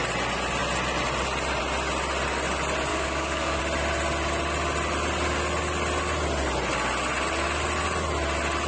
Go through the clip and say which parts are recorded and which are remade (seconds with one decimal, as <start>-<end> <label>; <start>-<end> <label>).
0.0-2.9 recorded; 2.9-3.6 remade; 3.6-8.7 recorded